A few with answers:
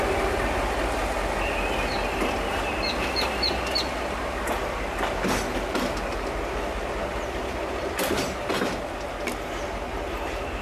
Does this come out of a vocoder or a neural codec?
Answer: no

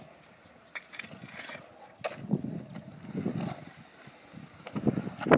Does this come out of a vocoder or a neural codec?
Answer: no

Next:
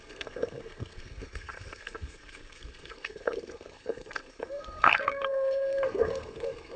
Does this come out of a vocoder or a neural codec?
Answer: yes